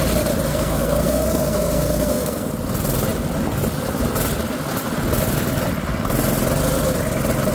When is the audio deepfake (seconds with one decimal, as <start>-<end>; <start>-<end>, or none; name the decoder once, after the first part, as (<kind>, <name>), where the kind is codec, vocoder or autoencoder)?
0.5-2.5 (codec, SNAC)